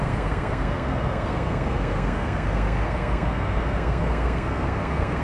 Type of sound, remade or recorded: remade